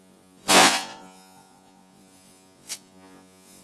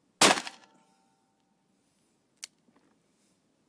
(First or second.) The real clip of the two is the second